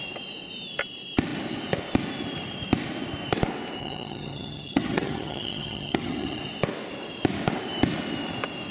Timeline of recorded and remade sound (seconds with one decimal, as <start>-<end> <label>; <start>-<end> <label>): 0.0-3.8 recorded; 3.8-6.4 remade; 6.4-8.7 recorded